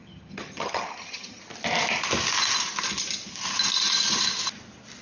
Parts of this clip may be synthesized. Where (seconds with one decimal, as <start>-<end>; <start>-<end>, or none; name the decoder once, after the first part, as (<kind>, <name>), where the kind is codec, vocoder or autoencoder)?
0.0-1.4 (vocoder, HiFi-GAN)